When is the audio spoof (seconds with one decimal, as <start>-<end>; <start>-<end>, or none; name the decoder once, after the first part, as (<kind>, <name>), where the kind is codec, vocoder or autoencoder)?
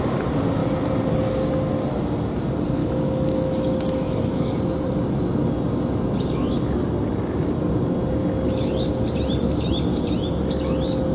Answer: 2.8-4.5 (autoencoder, DAC-VAE)